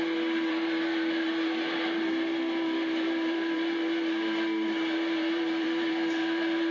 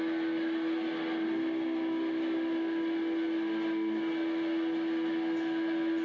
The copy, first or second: first